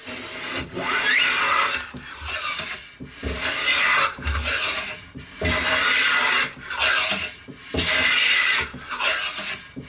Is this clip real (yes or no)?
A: yes